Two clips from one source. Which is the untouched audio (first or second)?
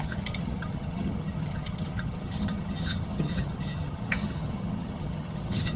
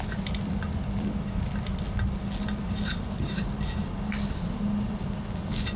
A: second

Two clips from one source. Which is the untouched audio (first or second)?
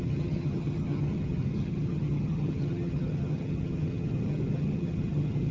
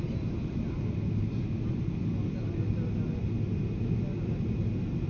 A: second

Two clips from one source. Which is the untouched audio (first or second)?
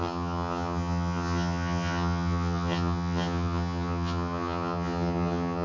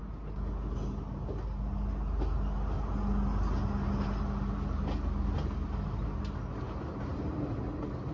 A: second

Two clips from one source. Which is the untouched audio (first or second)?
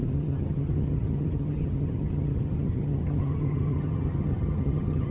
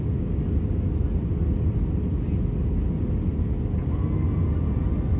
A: second